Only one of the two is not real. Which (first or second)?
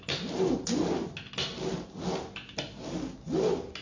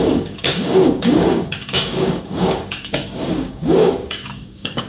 second